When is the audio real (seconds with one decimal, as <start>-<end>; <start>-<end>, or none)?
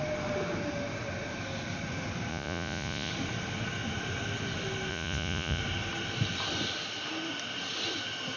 0.0-2.3; 3.1-4.9; 5.6-8.4